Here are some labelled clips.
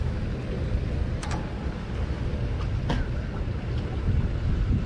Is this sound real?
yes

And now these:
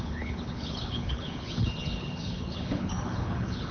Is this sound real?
no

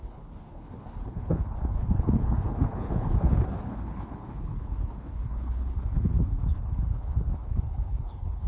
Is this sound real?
no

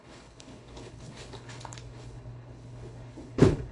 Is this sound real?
no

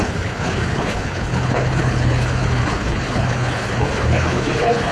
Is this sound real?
no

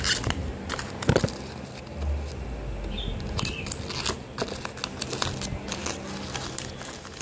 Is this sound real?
yes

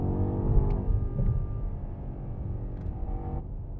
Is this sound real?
yes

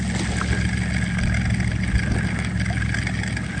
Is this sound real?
yes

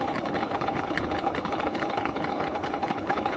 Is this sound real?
no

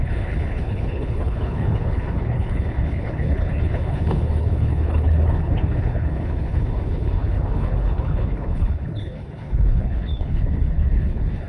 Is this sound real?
no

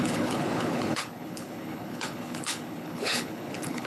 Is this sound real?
no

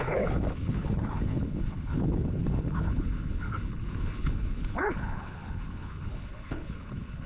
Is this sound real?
no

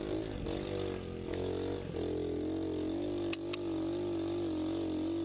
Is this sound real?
yes